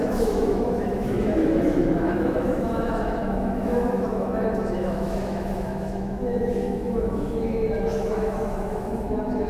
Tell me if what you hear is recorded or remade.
remade